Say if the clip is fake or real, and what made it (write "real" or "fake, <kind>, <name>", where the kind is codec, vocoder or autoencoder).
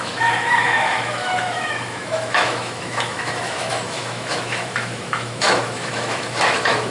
fake, autoencoder, DAC-VAE